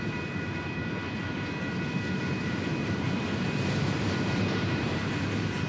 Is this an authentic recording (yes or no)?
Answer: no